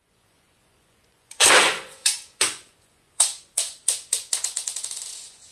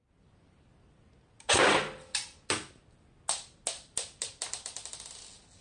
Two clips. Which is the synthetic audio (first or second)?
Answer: first